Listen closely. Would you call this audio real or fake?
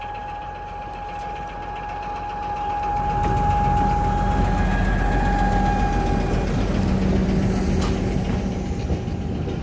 real